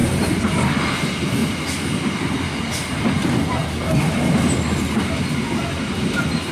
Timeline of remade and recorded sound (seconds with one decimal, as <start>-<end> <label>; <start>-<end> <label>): 0.0-0.5 remade; 0.5-1.4 recorded; 1.4-1.9 remade; 1.9-6.5 recorded